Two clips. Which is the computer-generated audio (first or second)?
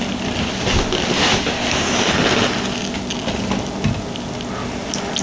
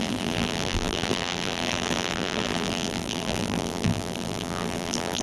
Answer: second